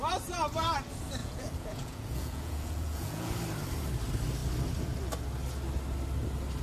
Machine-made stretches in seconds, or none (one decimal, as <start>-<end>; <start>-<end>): 1.2-3.3